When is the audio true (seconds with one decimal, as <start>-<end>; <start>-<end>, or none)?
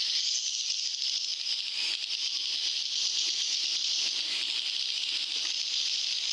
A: 0.0-6.3